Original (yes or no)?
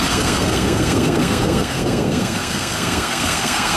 no